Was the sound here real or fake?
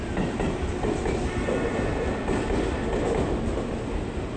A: real